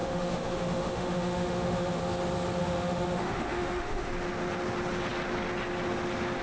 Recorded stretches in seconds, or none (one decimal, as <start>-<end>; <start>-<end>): 2.0-2.6; 4.1-6.4